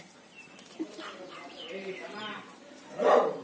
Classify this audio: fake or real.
fake